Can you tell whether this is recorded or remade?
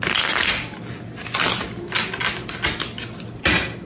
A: recorded